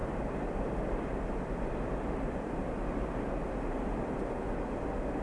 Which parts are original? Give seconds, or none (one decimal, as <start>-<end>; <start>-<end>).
0.0-5.2